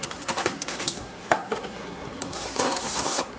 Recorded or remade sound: remade